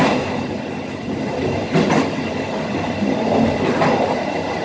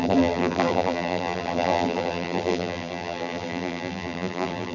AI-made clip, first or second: second